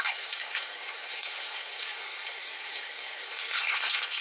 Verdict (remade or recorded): remade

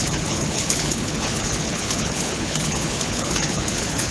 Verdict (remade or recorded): remade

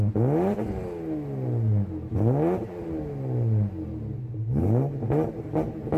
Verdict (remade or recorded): recorded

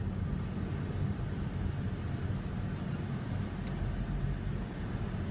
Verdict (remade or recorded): recorded